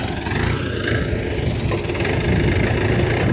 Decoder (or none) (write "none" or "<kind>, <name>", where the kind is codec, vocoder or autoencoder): none